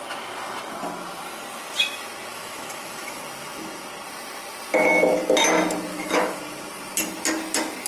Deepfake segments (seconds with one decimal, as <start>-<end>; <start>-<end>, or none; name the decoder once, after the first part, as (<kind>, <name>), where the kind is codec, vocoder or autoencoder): 2.3-3.2 (autoencoder, DAC-VAE); 5.9-6.4